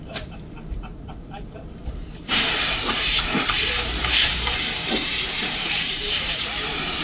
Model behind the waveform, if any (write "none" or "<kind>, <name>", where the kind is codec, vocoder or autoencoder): vocoder, BigVGAN v2